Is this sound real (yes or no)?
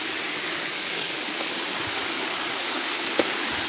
no